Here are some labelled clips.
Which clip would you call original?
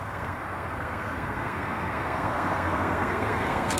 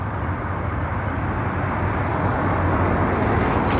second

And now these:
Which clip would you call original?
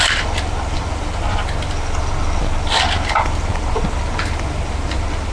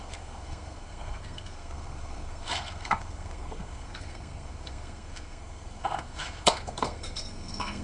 first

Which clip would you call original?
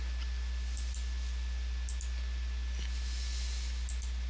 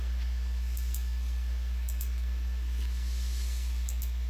first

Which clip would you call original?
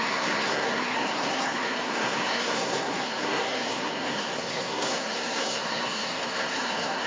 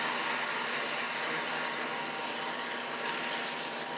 second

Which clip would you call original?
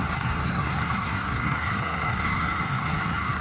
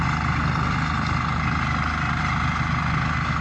second